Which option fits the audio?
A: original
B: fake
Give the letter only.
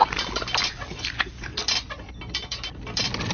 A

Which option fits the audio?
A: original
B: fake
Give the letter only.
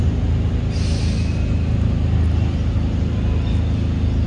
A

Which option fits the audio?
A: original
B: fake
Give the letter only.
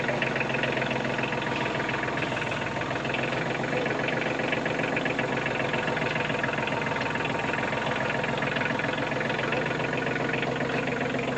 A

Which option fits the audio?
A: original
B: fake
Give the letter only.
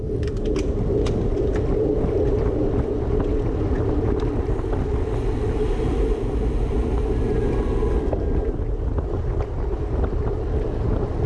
A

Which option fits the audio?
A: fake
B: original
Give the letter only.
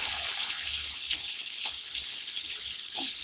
A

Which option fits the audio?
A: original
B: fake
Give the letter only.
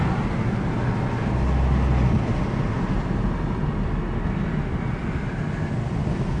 A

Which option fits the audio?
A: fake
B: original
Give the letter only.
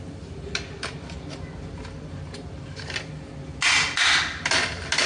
B